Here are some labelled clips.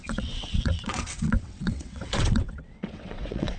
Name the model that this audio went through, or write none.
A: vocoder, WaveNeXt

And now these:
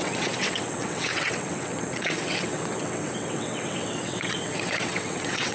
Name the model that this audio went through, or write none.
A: vocoder, WaveNeXt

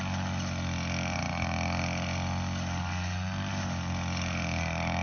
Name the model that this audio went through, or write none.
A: none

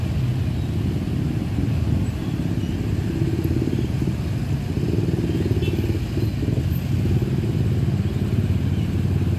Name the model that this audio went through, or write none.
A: none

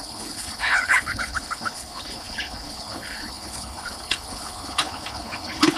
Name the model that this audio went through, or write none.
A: codec, HILCodec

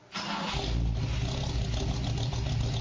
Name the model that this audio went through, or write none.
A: none